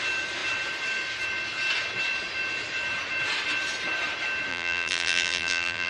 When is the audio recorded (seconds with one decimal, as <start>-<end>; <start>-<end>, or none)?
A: 0.0-4.5